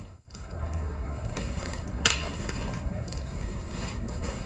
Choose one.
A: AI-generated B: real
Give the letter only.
A